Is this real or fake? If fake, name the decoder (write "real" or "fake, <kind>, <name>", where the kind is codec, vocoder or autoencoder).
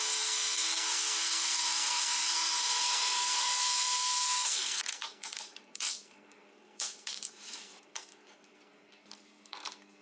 fake, codec, SNAC